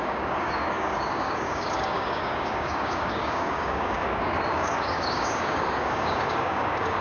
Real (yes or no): no